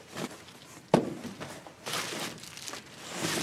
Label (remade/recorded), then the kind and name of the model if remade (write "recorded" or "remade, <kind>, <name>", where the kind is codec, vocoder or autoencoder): recorded